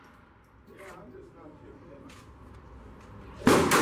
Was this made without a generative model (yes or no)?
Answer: yes